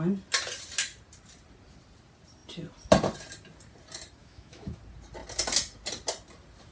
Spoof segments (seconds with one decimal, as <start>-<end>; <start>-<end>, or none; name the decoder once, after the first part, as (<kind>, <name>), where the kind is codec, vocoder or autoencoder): 4.2-4.8 (autoencoder, DAC-VAE)